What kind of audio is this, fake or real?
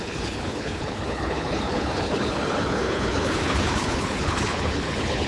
fake